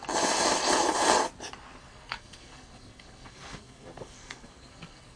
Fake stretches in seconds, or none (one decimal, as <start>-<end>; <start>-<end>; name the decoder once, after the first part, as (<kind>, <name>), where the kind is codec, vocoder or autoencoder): 1.8-5.2 (codec, SNAC)